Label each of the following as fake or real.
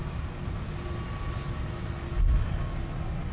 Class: real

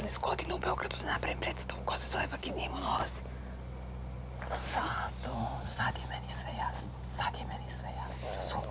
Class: real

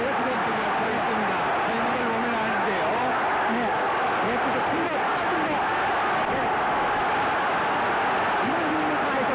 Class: real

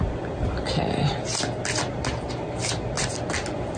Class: real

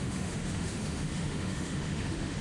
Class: fake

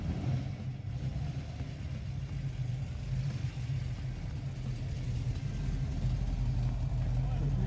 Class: real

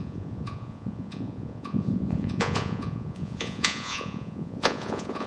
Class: fake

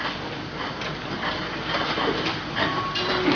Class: real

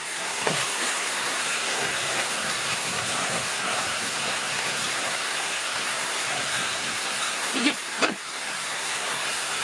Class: fake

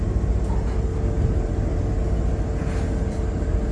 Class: real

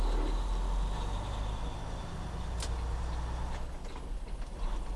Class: real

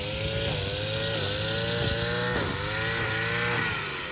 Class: real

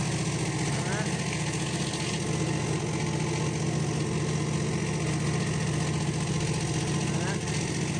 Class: real